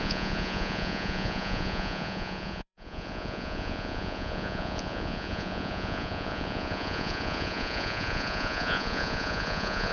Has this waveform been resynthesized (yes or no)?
yes